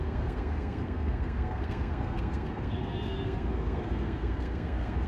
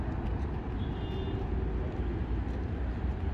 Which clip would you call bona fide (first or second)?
second